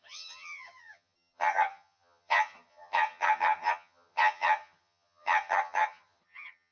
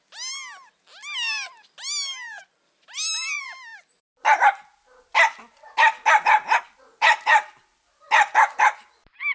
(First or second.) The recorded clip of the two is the second